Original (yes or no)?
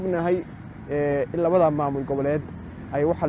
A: yes